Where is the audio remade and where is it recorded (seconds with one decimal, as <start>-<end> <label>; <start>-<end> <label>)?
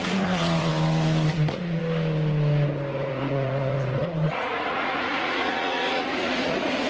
0.0-0.7 remade; 0.7-1.3 recorded; 1.3-1.8 remade; 1.8-3.1 recorded; 3.1-6.9 remade